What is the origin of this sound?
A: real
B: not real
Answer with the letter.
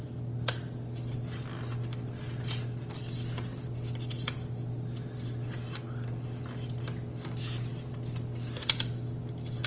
A